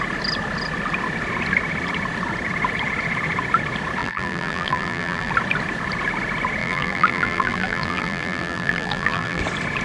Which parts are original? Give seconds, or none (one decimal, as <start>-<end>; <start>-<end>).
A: 0.0-4.0; 5.3-6.6; 9.4-9.8

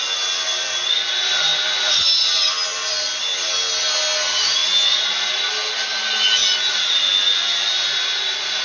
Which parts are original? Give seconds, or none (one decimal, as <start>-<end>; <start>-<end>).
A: 0.0-8.6

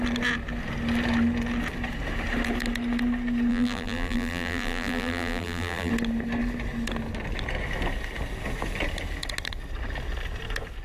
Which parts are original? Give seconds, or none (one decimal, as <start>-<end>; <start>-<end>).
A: 0.0-3.5; 5.9-10.8

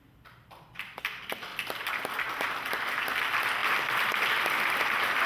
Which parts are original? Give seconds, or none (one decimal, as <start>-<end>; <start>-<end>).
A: 0.0-1.5; 2.5-3.6

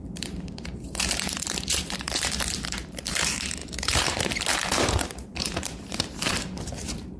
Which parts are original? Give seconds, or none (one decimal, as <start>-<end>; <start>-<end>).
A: none

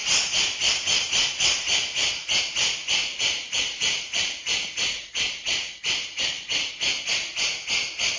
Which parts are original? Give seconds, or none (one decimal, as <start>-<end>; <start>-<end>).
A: 0.0-3.0; 6.7-8.2

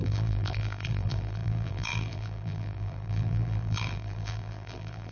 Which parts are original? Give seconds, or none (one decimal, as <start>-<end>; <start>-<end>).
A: none

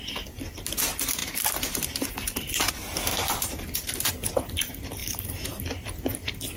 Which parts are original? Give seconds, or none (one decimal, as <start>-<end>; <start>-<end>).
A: 0.0-3.1; 4.1-5.0; 5.6-6.6